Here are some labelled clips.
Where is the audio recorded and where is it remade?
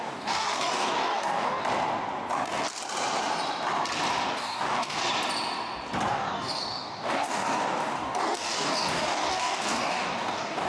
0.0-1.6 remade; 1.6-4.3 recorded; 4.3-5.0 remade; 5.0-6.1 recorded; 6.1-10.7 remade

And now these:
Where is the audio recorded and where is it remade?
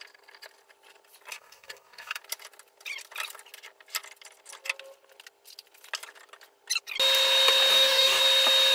0.0-1.3 recorded; 1.3-2.2 remade; 2.2-7.7 recorded; 7.7-8.2 remade; 8.2-8.7 recorded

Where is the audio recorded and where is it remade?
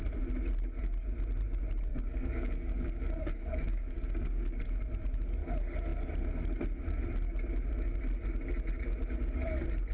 0.0-1.9 recorded; 1.9-4.6 remade; 4.6-9.9 recorded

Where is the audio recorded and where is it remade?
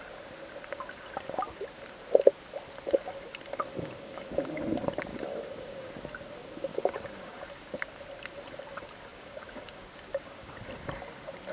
0.0-3.7 recorded; 3.7-4.3 remade; 4.3-5.1 recorded; 5.1-5.9 remade; 5.9-6.7 recorded; 6.7-7.4 remade; 7.4-9.1 recorded; 9.1-10.6 remade; 10.6-11.5 recorded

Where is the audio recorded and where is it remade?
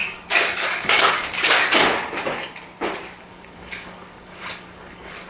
0.0-1.8 remade; 1.8-3.3 recorded; 3.3-5.3 remade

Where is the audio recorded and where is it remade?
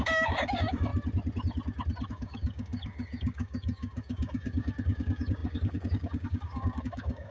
0.0-0.9 remade; 0.9-2.1 recorded; 2.1-7.3 remade